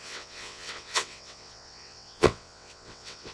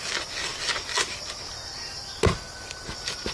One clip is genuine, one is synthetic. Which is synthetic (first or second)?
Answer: first